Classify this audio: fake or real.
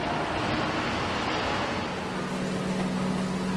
real